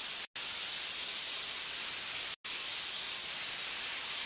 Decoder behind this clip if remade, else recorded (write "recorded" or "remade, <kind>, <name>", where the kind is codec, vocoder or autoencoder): recorded